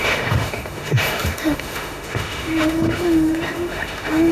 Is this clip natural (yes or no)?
no